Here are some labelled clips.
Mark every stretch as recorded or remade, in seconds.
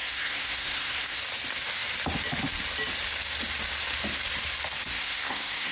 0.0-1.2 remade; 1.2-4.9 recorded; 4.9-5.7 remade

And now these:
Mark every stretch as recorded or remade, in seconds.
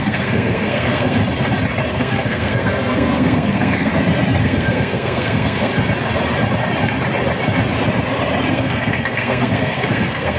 0.0-1.2 remade; 1.2-1.9 recorded; 1.9-3.9 remade; 3.9-4.4 recorded; 4.4-5.7 remade; 5.7-8.5 recorded; 8.5-10.4 remade